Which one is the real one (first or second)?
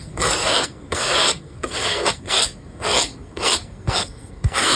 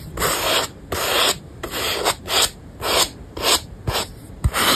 second